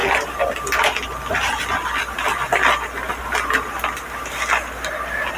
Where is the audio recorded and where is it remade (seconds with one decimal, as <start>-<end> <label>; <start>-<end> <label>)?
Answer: 0.0-5.4 recorded